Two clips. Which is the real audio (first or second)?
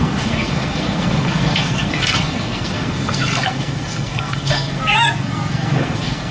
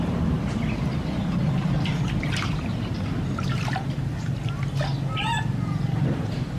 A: second